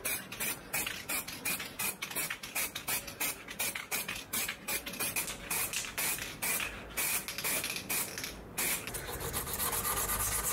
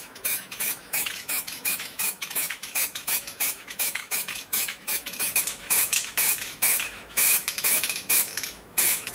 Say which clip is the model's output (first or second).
second